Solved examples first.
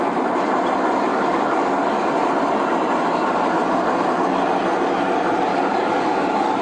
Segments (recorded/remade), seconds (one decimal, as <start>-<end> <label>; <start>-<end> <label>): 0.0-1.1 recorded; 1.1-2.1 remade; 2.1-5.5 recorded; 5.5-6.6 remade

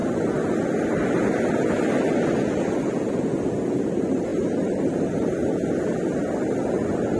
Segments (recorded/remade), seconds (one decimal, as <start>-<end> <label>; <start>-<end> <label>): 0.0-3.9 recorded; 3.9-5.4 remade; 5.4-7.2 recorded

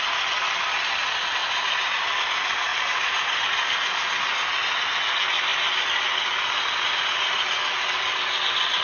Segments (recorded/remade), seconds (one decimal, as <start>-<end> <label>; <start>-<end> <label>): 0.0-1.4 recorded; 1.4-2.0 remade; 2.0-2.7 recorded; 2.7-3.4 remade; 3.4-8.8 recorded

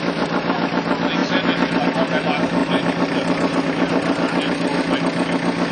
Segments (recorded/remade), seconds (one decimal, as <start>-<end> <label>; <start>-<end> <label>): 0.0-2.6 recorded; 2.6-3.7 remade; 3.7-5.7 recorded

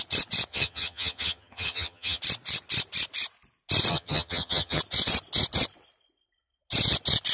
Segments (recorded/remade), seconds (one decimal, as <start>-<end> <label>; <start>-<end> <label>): 0.0-0.5 recorded; 0.5-2.2 remade; 2.2-3.9 recorded; 3.9-4.8 remade; 4.8-7.3 recorded